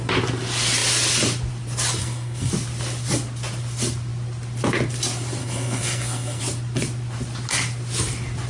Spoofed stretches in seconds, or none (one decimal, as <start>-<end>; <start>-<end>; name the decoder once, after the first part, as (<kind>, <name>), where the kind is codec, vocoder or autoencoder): 2.0-2.5 (codec, SNAC); 5.4-6.4